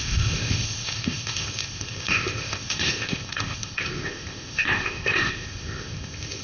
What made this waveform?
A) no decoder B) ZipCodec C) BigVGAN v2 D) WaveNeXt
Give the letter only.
B